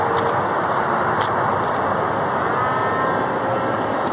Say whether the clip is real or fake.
real